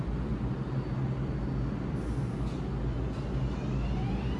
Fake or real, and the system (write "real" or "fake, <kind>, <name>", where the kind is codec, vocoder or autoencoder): real